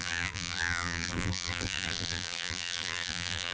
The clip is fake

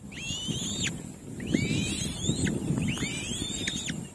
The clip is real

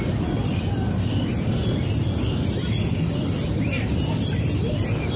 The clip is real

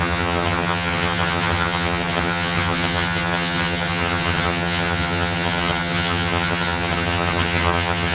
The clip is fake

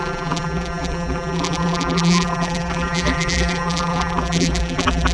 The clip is fake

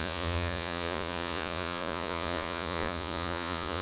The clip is fake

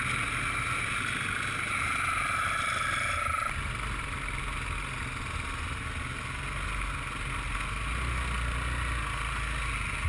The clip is real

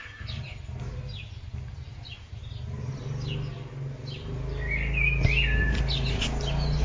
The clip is real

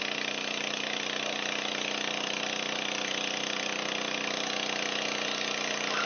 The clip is real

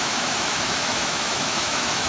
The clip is fake